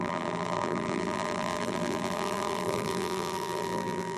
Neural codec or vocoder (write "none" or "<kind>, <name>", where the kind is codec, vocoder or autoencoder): vocoder, BigVGAN v2